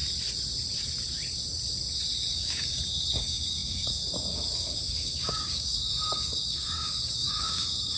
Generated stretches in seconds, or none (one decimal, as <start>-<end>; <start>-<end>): 2.3-8.0